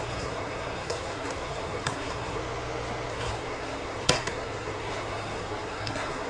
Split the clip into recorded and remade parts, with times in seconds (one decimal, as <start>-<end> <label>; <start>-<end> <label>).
0.0-2.4 remade; 2.4-3.1 recorded; 3.1-6.3 remade